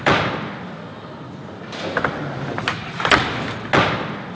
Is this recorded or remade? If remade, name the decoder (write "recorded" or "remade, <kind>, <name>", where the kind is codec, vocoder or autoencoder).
recorded